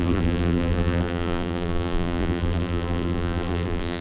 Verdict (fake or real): fake